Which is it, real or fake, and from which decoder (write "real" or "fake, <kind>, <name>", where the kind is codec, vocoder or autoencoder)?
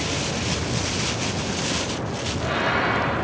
real